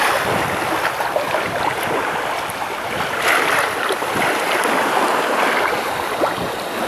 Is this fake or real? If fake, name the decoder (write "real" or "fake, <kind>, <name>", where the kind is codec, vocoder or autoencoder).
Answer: real